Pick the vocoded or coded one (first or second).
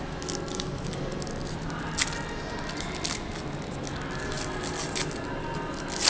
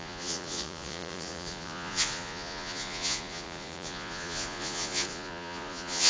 second